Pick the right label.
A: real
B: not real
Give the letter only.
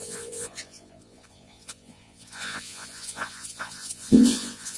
B